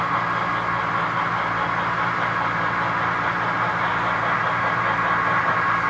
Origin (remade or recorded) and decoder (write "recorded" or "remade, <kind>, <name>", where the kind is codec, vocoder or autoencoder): recorded